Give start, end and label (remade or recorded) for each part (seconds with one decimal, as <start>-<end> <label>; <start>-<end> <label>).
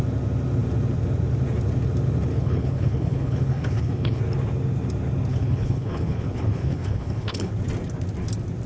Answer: 0.0-2.3 recorded; 2.3-4.2 remade; 4.2-5.3 recorded; 5.3-7.5 remade; 7.5-8.7 recorded